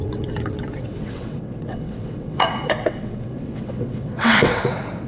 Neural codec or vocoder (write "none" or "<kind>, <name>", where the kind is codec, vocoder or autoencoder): vocoder, WaveNeXt